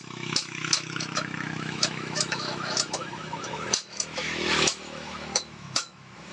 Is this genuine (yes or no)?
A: no